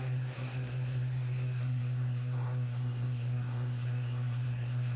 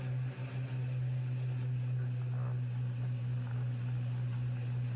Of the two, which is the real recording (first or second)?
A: second